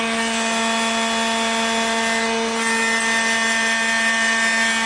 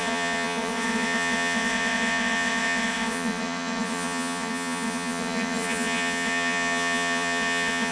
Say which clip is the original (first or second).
first